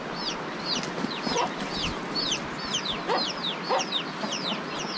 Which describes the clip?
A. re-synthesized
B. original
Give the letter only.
B